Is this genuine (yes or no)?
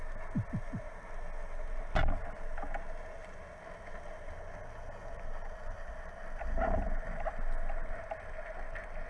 yes